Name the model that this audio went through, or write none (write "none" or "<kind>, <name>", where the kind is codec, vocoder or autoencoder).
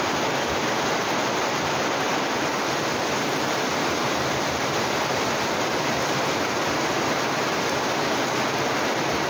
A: none